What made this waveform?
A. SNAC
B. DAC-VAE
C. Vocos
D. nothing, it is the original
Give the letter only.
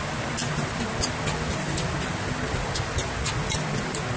D